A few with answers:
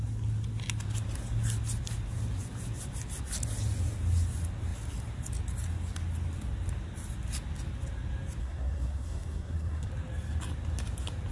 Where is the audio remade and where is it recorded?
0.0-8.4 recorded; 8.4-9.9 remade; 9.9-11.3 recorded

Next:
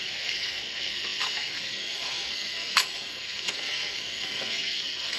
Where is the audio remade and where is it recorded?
0.0-5.2 remade